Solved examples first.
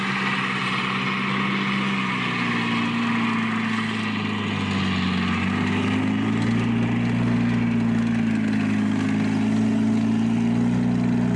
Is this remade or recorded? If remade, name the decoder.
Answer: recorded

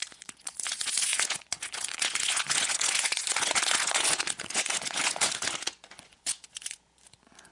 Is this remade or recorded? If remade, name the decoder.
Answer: remade, vocoder, Vocos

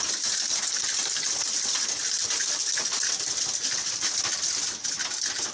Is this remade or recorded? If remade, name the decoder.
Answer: recorded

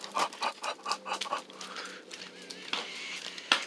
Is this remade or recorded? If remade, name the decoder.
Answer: recorded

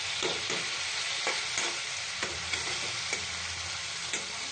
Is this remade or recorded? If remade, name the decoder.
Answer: recorded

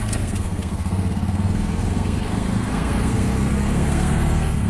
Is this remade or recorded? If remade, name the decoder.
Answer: remade, codec, SNAC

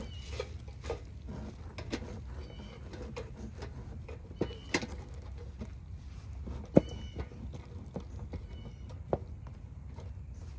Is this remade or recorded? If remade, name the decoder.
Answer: recorded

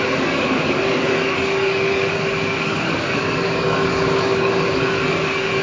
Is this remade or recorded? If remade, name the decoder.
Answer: remade, codec, DAC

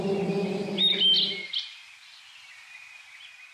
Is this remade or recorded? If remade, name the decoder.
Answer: recorded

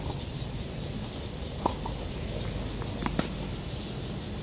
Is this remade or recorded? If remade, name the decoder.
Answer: recorded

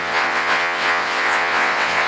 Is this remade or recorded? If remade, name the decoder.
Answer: remade, vocoder, WaveNeXt